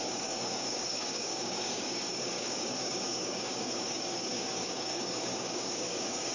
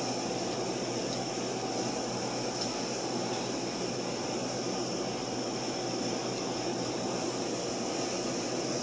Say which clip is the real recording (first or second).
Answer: second